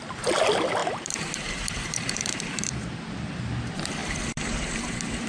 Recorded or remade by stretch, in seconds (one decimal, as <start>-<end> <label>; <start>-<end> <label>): 0.0-0.8 recorded; 0.8-3.0 remade; 3.0-4.0 recorded; 4.0-5.3 remade